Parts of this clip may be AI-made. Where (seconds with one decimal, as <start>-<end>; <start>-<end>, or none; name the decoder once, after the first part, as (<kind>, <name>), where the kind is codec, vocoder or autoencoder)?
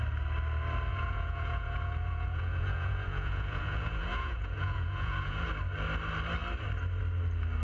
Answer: 0.9-5.5 (vocoder, Vocos)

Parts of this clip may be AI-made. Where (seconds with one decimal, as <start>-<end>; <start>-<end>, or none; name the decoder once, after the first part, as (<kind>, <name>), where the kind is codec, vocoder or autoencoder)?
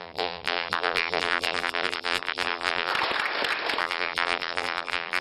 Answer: 0.0-2.9 (vocoder, BigVGAN v2); 3.8-5.2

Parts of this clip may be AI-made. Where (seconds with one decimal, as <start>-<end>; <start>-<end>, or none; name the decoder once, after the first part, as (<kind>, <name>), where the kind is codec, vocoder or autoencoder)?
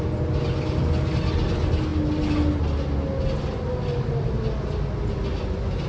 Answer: none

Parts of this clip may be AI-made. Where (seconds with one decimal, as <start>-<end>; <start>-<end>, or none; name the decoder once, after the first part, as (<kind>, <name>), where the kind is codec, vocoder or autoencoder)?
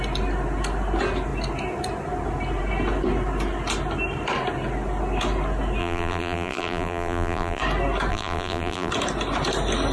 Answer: 5.8-7.6 (vocoder, BigVGAN v2); 8.1-8.9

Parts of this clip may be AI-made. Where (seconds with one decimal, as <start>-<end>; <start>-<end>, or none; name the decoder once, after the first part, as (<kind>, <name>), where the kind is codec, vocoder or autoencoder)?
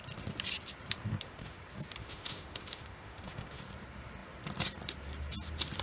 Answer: 1.1-1.6 (autoencoder, DAC-VAE); 2.0-3.6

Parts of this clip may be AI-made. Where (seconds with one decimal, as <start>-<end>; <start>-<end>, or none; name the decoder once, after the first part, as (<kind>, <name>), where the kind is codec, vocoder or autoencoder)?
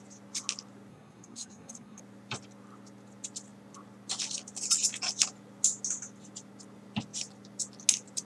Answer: 0.9-2.0 (codec, SNAC)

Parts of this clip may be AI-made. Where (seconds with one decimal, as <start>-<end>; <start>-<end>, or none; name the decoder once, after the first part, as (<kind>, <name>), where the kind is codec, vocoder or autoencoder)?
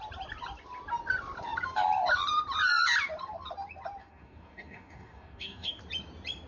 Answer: 4.0-5.8 (codec, DAC)